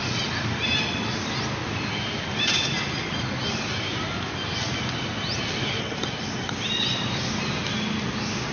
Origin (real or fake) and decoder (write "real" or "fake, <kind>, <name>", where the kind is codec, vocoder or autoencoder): real